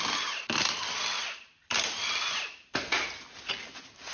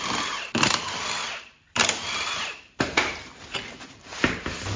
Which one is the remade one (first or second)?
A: second